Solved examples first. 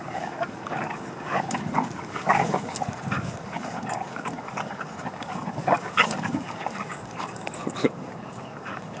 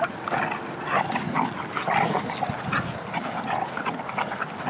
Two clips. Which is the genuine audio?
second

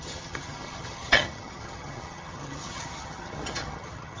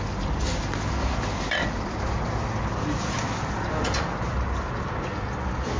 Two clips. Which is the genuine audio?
second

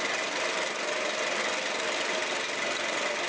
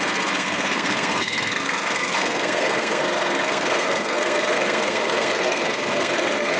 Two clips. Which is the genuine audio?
first